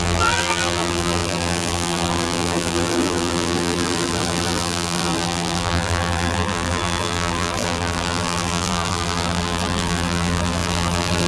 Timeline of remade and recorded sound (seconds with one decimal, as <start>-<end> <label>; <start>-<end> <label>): 0.0-11.3 remade